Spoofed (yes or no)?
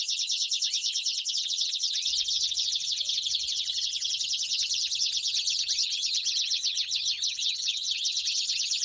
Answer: yes